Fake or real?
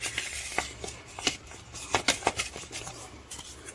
real